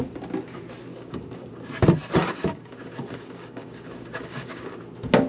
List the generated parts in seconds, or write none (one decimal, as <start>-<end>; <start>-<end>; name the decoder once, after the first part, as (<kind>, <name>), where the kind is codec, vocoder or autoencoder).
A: 0.9-1.5 (codec, DAC); 2.2-4.8